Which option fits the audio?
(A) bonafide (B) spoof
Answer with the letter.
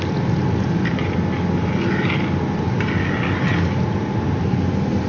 A